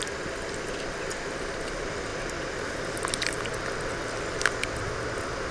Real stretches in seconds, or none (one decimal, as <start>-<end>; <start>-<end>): 0.0-5.5